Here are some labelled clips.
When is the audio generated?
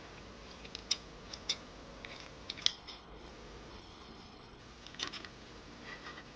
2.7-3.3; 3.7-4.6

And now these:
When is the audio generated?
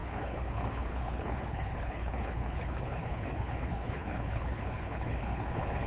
0.0-5.9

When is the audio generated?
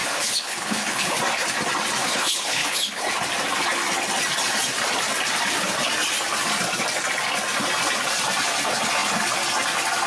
0.0-1.2; 2.0-3.1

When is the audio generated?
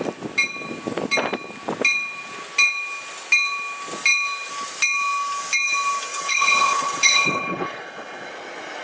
6.1-8.3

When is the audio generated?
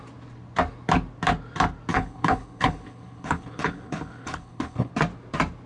1.9-4.9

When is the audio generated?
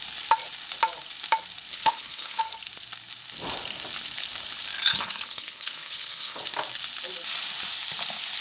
1.7-2.4; 4.9-6.4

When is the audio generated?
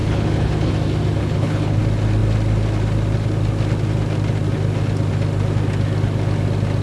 0.0-0.7; 1.2-1.8